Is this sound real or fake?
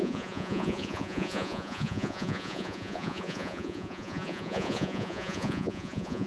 fake